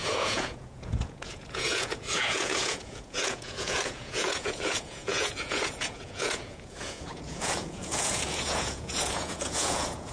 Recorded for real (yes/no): no